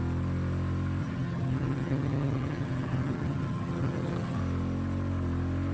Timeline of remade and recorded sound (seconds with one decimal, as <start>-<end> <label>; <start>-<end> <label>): 0.0-1.0 recorded; 1.0-4.4 remade; 4.4-5.7 recorded